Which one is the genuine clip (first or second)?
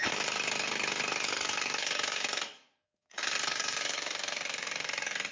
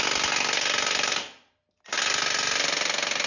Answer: second